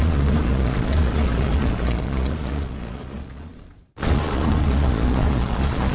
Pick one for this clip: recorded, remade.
remade